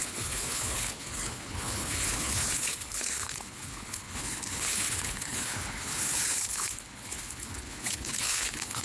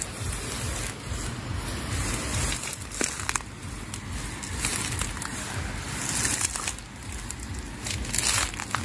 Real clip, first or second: second